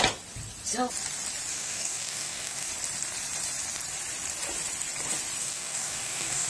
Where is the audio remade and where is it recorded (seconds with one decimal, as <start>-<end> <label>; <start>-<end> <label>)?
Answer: 0.0-1.5 recorded; 1.5-2.7 remade; 2.7-5.4 recorded; 5.4-6.5 remade